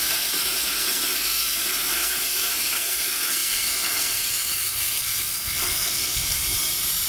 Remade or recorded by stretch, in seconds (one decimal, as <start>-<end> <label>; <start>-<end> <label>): 0.0-6.4 remade; 6.4-7.1 recorded